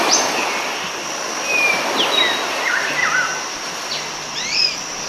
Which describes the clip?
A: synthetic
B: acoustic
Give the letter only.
B